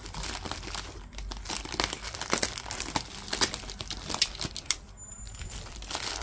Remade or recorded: recorded